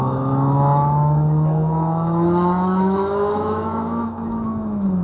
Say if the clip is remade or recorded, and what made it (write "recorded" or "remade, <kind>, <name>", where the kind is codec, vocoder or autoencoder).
remade, autoencoder, DAC-VAE